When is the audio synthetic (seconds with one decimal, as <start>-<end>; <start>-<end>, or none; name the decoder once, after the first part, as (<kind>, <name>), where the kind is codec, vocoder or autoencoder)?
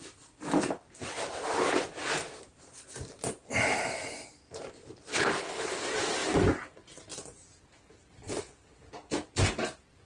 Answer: 5.1-5.6 (codec, HILCodec)